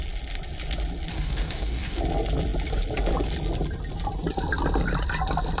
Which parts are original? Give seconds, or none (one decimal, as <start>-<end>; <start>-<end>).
0.0-1.1; 2.0-5.6

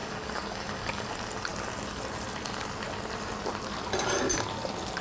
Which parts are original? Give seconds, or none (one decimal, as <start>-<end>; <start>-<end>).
1.1-5.0